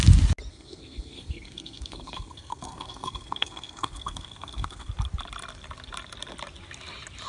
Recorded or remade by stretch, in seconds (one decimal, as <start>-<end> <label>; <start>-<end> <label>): 0.0-0.5 recorded; 0.5-4.9 remade; 4.9-7.3 recorded